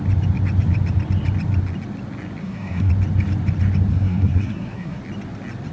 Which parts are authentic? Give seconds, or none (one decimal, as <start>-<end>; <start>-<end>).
0.0-2.4; 2.9-3.9; 5.0-5.7

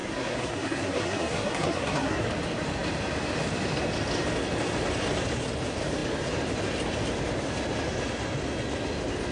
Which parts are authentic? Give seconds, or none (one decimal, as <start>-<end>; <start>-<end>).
2.3-9.3

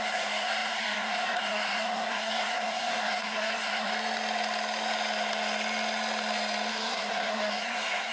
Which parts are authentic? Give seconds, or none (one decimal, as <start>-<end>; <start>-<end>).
3.9-6.7

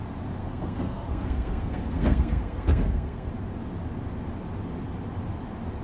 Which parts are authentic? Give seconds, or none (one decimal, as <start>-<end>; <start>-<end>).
0.0-0.4; 3.3-5.8

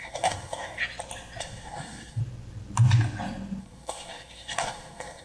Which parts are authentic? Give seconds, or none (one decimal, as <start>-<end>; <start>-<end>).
0.8-1.4; 2.2-3.6

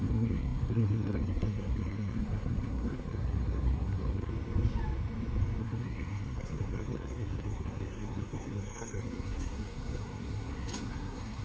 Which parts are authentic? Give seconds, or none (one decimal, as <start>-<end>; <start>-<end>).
4.3-5.6